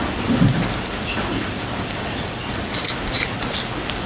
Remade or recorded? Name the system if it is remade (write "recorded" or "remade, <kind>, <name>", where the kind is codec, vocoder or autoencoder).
remade, vocoder, BigVGAN v2